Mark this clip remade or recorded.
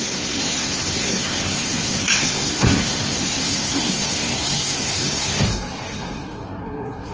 remade